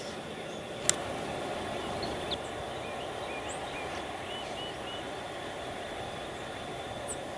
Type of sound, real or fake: real